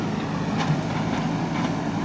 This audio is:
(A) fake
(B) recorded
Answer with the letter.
B